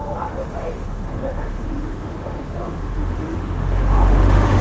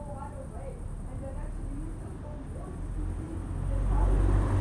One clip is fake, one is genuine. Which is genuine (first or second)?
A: second